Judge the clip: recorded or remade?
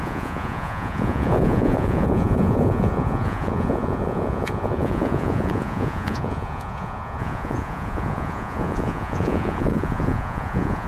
remade